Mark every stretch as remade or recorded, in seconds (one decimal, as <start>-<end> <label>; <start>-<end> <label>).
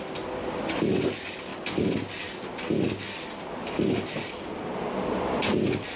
0.0-6.0 recorded